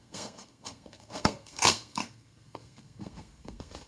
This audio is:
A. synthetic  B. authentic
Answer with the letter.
A